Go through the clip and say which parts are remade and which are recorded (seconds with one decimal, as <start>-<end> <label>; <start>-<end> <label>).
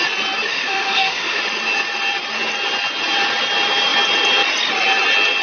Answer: 0.0-0.5 recorded; 0.5-1.4 remade; 1.4-5.4 recorded